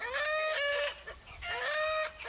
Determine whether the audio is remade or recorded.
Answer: recorded